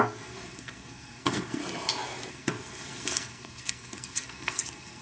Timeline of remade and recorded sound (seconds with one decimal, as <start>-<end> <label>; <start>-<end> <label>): 0.0-1.6 remade; 1.6-2.3 recorded; 2.3-5.0 remade